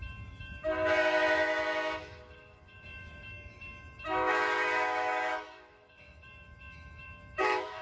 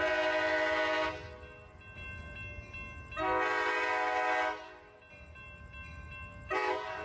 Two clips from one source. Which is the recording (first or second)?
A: second